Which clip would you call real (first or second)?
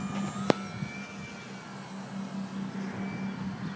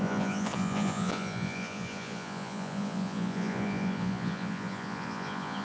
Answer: first